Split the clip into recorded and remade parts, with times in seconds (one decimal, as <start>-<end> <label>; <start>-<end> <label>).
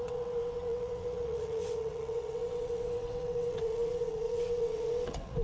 0.0-5.4 remade